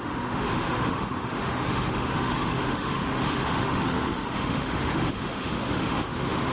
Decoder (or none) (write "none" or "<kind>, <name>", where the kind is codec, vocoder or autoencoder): autoencoder, DAC-VAE